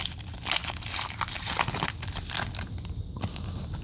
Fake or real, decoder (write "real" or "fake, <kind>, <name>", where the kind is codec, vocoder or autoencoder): real